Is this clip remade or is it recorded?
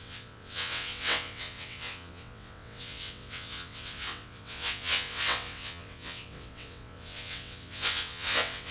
remade